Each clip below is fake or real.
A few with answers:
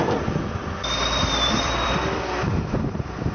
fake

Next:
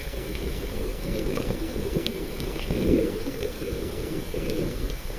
fake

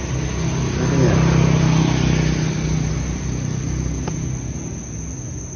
real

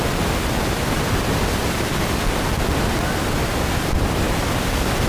real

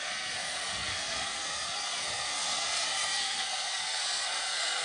fake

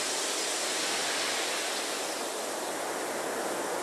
real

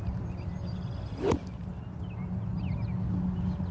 real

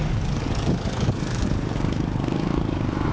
fake